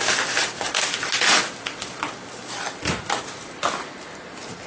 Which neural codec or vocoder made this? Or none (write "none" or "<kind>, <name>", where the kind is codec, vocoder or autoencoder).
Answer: none